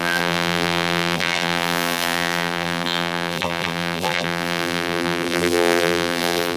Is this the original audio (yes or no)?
no